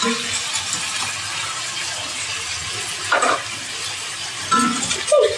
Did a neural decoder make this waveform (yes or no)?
no